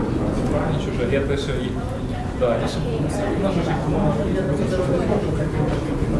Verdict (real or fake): real